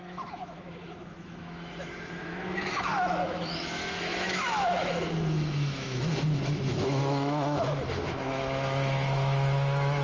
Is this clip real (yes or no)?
no